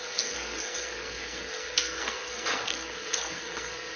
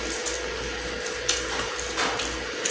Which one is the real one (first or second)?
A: second